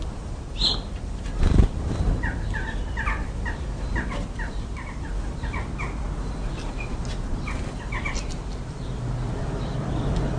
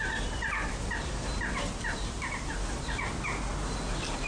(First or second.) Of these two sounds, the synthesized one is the first